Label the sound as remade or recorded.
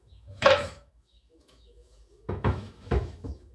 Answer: remade